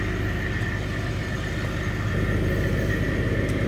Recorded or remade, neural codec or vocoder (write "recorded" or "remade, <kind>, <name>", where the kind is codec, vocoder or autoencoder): recorded